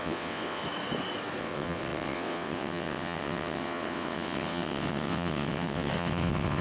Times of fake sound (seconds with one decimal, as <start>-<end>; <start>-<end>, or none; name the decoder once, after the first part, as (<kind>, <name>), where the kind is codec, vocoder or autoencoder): 0.0-0.6 (vocoder, WaveNeXt); 1.4-6.6